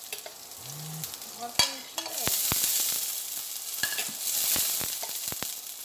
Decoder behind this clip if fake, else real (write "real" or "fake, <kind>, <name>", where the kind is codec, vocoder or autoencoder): real